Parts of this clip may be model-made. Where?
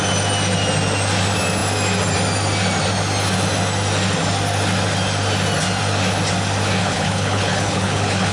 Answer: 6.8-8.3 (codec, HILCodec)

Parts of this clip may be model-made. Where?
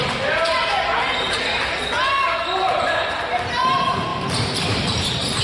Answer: 4.1-5.4 (vocoder, BigVGAN v2)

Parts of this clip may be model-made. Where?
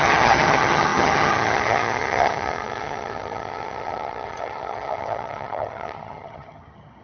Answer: 0.0-7.0 (vocoder, HiFi-GAN)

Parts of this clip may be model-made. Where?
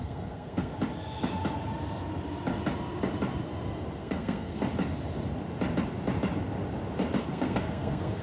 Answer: 0.0-0.7 (codec, SNAC); 4.0-4.6; 7.2-8.2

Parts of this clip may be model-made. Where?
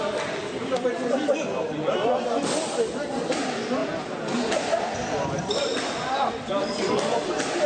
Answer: 0.6-2.2 (vocoder, BigVGAN v2); 3.8-6.7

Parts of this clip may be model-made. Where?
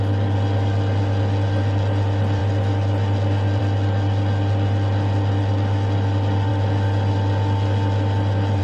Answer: none